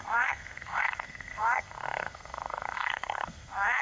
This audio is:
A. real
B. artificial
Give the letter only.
B